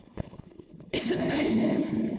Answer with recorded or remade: remade